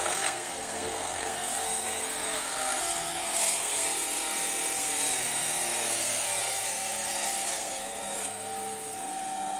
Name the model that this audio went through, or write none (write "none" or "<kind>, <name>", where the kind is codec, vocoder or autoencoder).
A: codec, SNAC